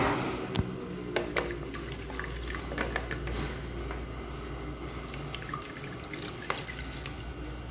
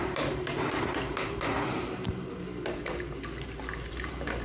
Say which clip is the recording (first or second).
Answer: first